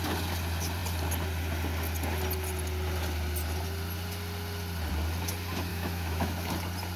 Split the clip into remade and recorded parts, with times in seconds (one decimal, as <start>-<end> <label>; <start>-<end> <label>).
0.0-5.7 recorded; 5.7-6.5 remade; 6.5-7.0 recorded